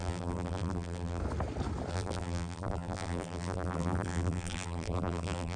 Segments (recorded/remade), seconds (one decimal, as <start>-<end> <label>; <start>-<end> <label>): 0.0-1.2 remade; 1.2-1.9 recorded; 1.9-5.6 remade